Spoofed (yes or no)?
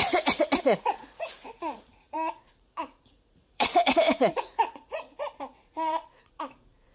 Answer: yes